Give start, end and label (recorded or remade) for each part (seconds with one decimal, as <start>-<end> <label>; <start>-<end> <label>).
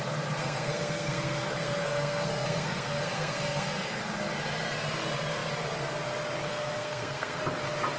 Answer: 0.0-0.4 recorded; 0.4-4.0 remade; 4.0-6.4 recorded; 6.4-7.4 remade; 7.4-8.0 recorded